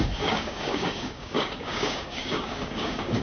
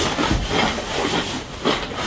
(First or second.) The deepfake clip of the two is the first